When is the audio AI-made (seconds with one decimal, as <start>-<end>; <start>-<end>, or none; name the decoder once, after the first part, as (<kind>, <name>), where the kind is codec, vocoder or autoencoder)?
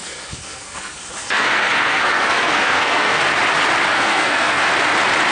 0.0-3.2 (codec, SNAC); 3.9-4.7